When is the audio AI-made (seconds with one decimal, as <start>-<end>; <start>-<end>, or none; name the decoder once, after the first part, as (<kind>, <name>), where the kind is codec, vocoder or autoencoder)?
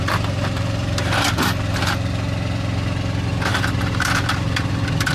0.0-1.9 (vocoder, BigVGAN v2); 3.5-5.1